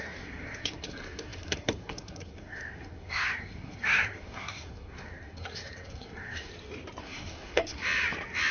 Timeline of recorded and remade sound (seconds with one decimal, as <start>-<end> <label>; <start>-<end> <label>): 0.0-6.5 remade; 6.5-7.0 recorded; 7.0-7.8 remade; 7.8-8.5 recorded